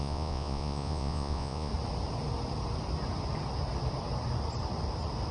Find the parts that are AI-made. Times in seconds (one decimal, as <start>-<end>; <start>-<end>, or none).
0.0-1.7